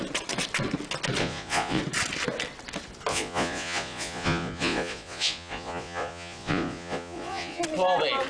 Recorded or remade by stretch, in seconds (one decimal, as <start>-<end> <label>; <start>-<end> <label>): 0.0-1.2 recorded; 1.2-1.8 remade; 1.8-3.1 recorded; 3.1-7.6 remade; 7.6-8.3 recorded